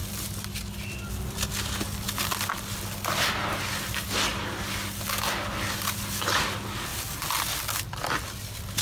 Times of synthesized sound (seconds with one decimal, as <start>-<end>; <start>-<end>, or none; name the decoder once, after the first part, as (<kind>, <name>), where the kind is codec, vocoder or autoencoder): none